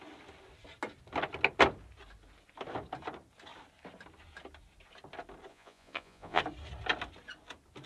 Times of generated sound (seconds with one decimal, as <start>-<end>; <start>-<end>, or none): 5.5-6.4